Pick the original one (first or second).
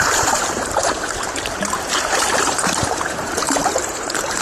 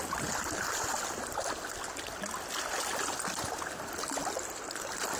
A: second